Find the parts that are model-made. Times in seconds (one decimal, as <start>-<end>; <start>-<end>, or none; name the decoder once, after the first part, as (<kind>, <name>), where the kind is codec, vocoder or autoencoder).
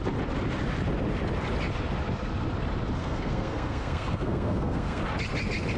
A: 3.0-5.0 (codec, SNAC)